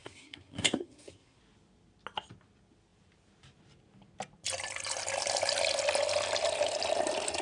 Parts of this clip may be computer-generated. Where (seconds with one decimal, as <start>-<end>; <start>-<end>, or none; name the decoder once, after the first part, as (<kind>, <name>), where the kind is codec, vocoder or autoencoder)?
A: 0.0-1.4 (codec, SNAC)